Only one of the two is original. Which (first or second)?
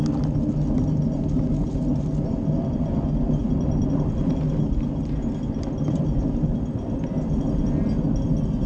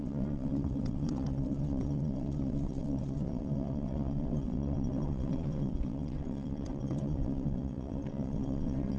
first